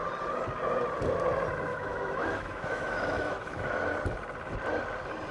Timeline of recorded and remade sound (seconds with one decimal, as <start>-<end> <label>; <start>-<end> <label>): 0.0-1.7 recorded; 1.7-3.9 remade; 3.9-5.3 recorded